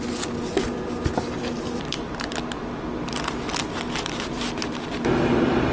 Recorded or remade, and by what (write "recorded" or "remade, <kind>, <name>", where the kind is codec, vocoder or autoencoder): recorded